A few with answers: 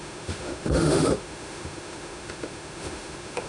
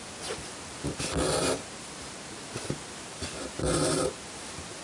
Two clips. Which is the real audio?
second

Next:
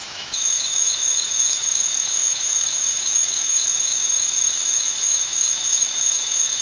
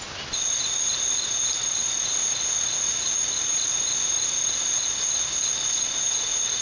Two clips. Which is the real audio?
second